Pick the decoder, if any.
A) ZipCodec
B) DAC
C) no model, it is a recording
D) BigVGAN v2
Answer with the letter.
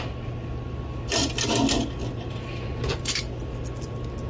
C